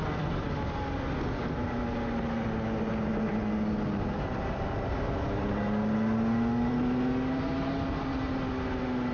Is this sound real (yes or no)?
yes